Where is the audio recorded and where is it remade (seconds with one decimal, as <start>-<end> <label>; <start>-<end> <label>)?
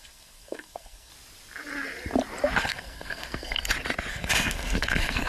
0.0-1.1 remade; 1.1-2.6 recorded; 2.6-3.6 remade; 3.6-4.1 recorded; 4.1-5.3 remade